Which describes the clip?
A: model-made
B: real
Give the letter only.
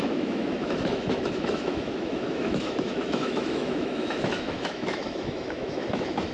A